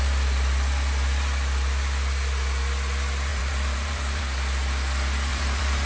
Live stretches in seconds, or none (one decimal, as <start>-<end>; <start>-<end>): 0.0-3.3; 4.2-5.3